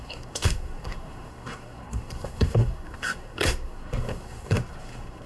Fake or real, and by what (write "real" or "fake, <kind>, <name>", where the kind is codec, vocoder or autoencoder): fake, codec, SNAC